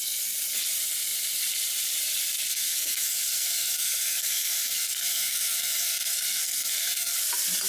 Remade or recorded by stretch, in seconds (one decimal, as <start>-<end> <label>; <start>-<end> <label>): 0.0-2.5 recorded; 2.5-7.1 remade; 7.1-7.7 recorded